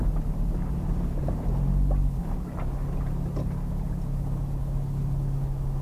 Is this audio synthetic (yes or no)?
no